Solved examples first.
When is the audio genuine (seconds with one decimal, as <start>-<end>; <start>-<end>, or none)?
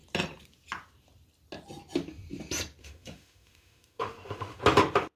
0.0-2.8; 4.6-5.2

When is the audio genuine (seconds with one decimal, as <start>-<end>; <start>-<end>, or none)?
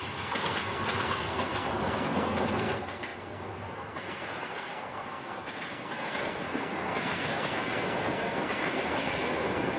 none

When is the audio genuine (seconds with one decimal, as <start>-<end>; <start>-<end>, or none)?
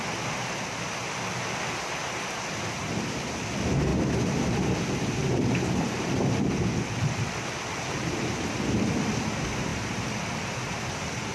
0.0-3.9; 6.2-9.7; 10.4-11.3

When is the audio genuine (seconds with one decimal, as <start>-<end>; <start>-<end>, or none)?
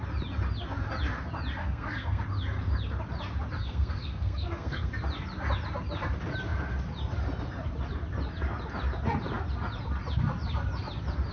0.0-1.6; 2.2-3.6; 4.9-11.3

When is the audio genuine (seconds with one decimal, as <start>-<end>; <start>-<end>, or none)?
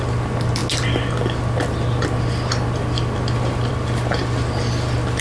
0.0-5.2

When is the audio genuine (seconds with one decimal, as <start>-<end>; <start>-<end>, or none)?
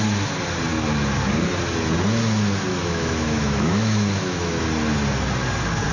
0.0-2.7; 4.6-5.9